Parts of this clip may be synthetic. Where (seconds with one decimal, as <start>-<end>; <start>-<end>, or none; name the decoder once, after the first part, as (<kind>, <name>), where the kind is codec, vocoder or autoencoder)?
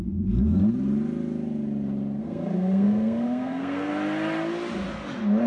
0.0-0.6 (codec, SNAC); 2.2-3.9